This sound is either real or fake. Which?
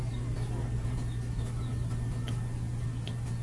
real